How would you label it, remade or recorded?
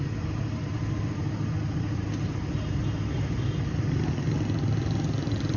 recorded